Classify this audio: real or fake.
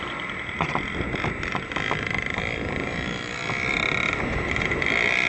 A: real